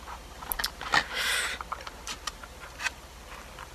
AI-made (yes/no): no